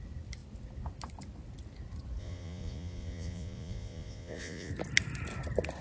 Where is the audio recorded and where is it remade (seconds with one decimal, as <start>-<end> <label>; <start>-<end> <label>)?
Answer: 0.0-2.2 recorded; 2.2-4.7 remade; 4.7-5.8 recorded